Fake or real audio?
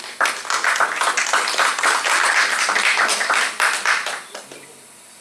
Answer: real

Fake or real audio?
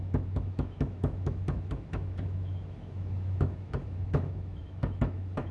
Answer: fake